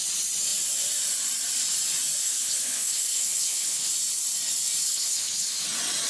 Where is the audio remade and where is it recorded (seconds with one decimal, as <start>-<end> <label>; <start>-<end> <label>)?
0.0-2.2 recorded; 2.2-3.9 remade; 3.9-4.8 recorded; 4.8-5.6 remade; 5.6-6.1 recorded